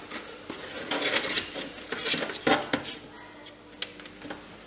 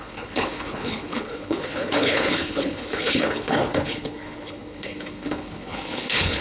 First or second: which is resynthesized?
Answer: second